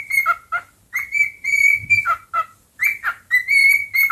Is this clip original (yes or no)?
yes